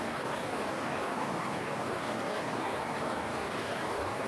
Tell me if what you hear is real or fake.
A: fake